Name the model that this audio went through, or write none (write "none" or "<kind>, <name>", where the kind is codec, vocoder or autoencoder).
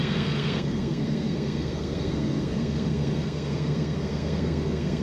codec, SNAC